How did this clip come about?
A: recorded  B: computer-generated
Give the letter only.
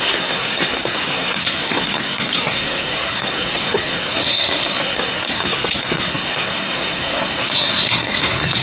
B